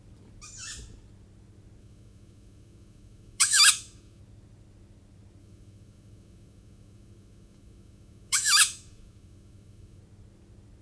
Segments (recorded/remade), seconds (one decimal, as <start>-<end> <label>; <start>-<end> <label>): 0.0-1.8 recorded; 1.8-4.2 remade; 4.2-5.4 recorded; 5.4-10.0 remade; 10.0-10.8 recorded